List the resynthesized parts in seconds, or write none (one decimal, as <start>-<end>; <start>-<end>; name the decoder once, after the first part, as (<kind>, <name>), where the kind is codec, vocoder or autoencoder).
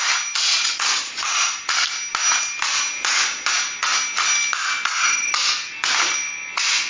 0.5-1.7 (vocoder, Vocos)